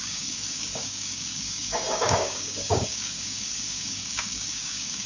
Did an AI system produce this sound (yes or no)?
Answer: yes